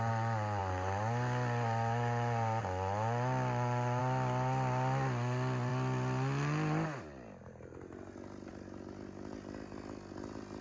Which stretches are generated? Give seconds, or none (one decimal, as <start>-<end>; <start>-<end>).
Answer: none